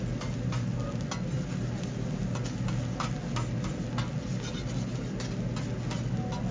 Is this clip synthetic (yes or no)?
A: no